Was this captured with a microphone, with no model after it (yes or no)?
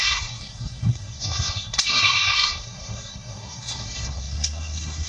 no